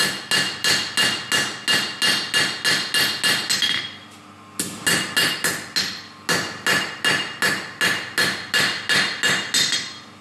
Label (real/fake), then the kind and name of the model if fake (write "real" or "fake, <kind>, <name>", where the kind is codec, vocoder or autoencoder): real